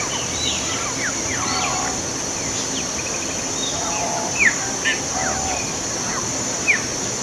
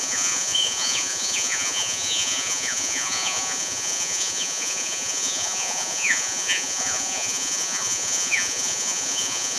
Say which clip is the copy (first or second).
second